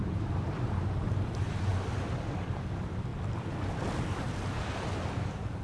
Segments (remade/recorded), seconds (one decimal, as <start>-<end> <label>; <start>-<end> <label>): 0.0-1.7 remade; 1.7-2.5 recorded; 2.5-3.1 remade; 3.1-4.2 recorded; 4.2-5.6 remade